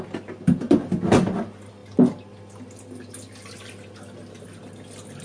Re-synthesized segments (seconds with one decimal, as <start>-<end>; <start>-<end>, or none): none